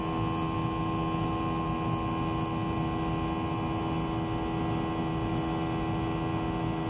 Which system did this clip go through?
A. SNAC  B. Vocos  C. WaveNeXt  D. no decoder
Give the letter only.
D